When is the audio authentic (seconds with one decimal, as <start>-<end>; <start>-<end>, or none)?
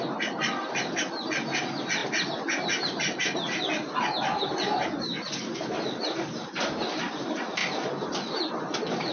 0.0-9.1